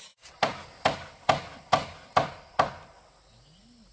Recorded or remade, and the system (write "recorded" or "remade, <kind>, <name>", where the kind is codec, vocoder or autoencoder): recorded